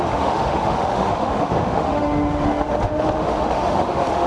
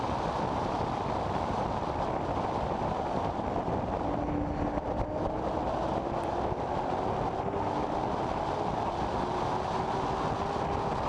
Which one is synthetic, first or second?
first